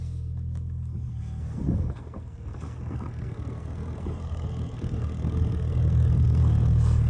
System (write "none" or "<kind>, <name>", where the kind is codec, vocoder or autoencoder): codec, SNAC